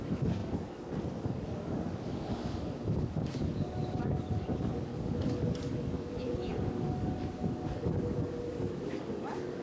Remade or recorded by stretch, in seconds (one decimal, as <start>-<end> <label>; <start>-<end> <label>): 0.0-9.6 remade